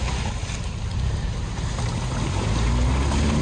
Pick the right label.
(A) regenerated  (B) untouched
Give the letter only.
B